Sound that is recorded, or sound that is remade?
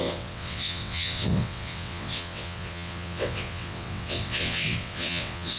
remade